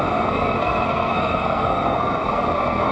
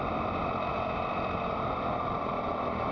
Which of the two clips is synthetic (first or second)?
first